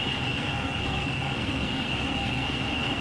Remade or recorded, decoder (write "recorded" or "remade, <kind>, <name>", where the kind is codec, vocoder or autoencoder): remade, codec, SNAC